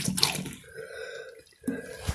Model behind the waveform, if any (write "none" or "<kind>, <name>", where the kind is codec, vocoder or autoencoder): none